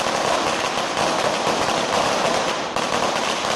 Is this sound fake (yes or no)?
no